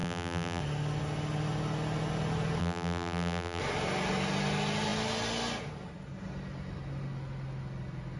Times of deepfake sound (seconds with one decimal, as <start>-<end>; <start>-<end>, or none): 0.0-0.6; 2.6-3.6